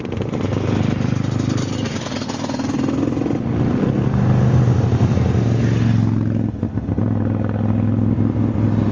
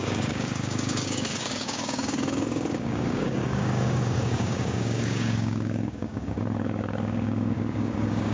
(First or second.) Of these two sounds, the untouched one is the first